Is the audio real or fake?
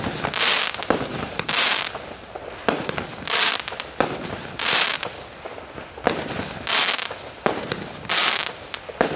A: real